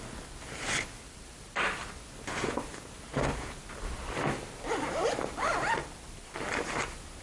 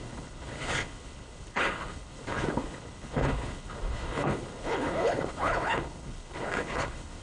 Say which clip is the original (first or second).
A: first